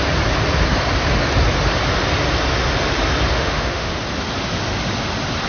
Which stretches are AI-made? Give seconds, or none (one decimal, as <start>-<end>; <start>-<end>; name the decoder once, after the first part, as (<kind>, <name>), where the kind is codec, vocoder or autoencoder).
3.3-3.9 (autoencoder, DAC-VAE)